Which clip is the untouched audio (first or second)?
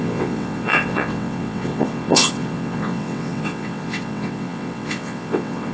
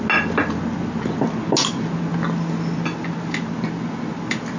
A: second